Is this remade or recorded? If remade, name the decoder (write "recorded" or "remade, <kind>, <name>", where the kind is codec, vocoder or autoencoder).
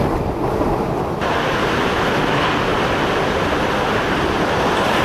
recorded